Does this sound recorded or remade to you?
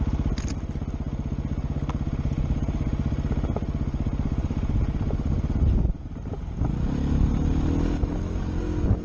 recorded